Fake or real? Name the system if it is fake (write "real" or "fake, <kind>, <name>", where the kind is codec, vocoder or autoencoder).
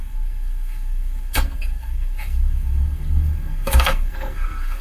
fake, codec, SNAC